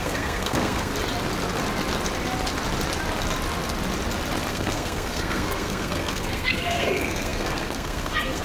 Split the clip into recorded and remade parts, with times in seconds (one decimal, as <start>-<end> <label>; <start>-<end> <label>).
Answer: 0.0-0.9 remade; 0.9-4.5 recorded; 4.5-8.4 remade